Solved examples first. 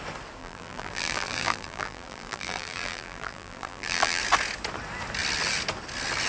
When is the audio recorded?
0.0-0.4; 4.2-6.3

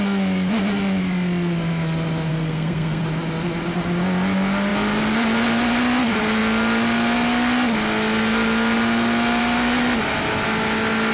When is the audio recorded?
0.0-2.3; 3.0-11.1